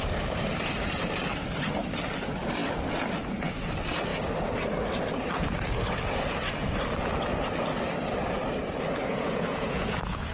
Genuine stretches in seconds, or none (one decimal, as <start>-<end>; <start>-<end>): 0.0-9.1